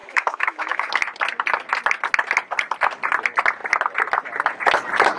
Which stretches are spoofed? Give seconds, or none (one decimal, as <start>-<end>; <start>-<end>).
0.0-0.9